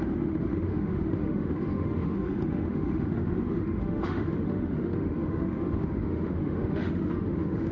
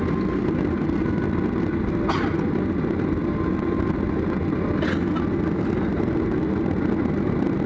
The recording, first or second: second